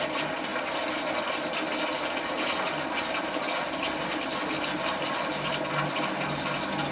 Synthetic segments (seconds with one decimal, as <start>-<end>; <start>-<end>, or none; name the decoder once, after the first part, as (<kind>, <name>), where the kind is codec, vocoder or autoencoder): none